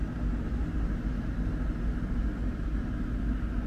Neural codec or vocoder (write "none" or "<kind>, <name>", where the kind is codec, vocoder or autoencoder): none